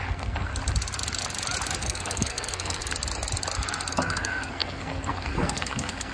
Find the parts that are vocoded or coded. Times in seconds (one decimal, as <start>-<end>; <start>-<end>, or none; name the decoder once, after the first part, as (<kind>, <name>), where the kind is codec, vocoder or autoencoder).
0.0-0.5 (codec, SNAC); 1.8-2.8; 3.9-6.1